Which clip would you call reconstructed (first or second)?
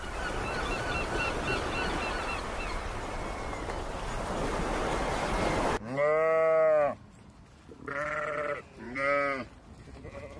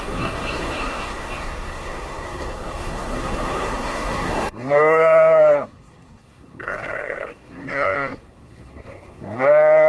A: second